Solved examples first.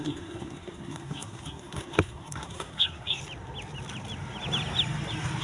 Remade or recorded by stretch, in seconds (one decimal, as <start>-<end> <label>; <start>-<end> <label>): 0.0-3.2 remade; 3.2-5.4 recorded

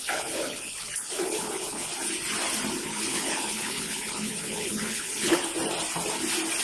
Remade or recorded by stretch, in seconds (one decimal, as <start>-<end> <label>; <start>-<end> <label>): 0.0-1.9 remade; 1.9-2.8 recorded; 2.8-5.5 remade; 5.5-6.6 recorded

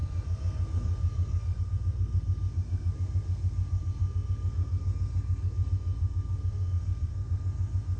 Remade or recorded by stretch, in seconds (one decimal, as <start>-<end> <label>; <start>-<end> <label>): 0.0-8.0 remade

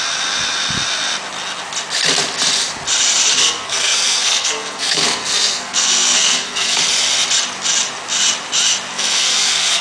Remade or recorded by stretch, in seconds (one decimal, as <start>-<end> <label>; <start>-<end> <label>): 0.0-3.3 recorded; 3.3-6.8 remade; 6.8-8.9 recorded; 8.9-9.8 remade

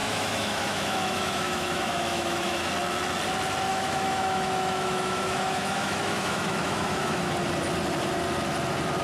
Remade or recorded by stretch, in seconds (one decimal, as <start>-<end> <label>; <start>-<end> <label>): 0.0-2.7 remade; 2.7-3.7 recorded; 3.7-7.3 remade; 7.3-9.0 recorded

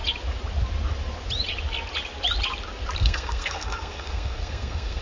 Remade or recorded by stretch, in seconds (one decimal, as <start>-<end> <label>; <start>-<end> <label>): 0.0-3.0 recorded; 3.0-5.0 remade

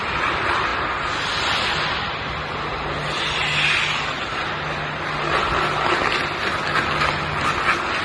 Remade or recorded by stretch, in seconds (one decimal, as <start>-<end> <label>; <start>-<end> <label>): 0.0-8.0 recorded

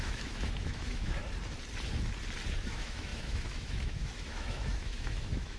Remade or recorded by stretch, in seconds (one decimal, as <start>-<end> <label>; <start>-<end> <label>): 0.0-1.2 remade; 1.2-2.6 recorded; 2.6-5.6 remade